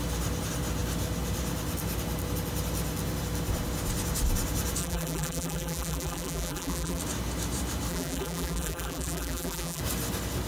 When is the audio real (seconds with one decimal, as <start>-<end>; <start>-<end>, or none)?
0.0-4.8; 7.0-7.9; 9.8-10.5